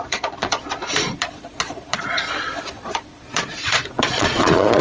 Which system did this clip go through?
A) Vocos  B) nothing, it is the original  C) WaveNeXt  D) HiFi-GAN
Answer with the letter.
A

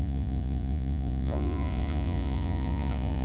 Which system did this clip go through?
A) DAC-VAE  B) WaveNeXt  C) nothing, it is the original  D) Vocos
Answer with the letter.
D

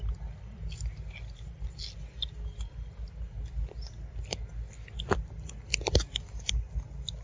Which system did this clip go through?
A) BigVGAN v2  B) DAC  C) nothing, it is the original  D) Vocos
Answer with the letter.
C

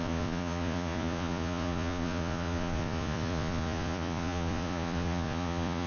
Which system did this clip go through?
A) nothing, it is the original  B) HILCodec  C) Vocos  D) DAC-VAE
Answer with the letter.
C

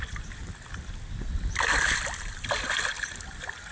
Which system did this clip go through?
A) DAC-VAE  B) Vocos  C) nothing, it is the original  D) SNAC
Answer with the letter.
C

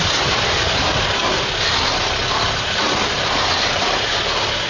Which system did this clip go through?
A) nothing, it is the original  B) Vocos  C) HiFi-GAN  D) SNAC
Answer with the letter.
A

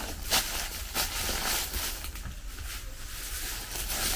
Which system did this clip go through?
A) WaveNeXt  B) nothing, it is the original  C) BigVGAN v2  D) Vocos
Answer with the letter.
B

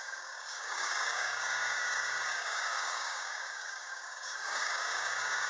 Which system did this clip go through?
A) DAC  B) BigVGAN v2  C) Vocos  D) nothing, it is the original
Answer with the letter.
A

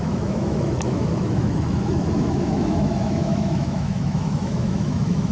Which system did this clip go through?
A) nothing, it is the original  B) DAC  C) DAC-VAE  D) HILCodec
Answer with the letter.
C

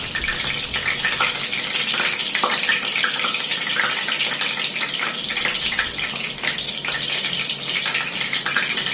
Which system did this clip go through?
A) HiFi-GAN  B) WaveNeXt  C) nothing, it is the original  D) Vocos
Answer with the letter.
C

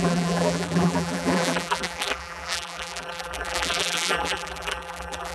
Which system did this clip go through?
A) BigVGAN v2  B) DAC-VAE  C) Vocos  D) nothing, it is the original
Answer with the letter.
A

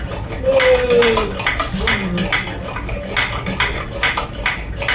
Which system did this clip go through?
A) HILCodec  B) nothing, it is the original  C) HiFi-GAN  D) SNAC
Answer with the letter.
B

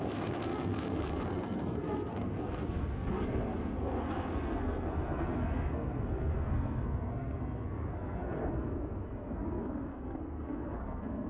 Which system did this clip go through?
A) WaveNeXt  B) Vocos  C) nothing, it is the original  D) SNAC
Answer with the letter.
D